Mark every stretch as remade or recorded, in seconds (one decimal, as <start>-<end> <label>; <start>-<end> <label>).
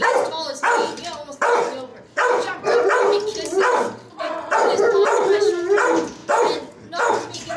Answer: 0.0-7.6 recorded